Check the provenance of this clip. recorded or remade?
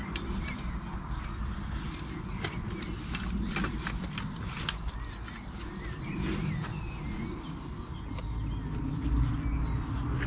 recorded